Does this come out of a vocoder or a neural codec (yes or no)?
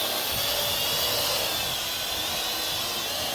no